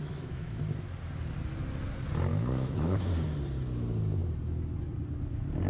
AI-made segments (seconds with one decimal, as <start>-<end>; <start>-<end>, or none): 0.0-0.6; 2.3-3.1